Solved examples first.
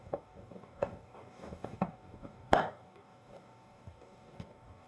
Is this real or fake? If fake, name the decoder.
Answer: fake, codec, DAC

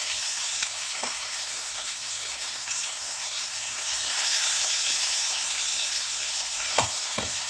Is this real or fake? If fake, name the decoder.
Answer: fake, codec, SNAC